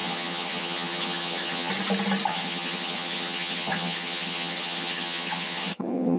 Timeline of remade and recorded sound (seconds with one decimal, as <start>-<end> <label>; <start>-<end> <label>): 0.0-1.7 remade; 1.7-2.3 recorded; 2.3-6.2 remade